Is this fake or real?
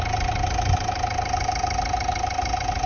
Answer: real